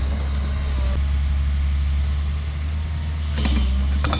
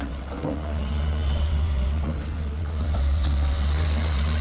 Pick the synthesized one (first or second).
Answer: second